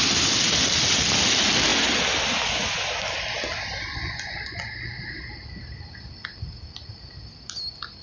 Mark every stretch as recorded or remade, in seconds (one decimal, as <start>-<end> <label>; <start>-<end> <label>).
0.0-3.9 recorded; 3.9-4.6 remade; 4.6-8.0 recorded